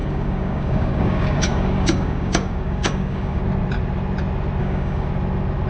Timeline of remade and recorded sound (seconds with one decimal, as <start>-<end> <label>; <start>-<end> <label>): 0.0-3.4 remade; 3.4-4.6 recorded; 4.6-5.1 remade; 5.1-5.7 recorded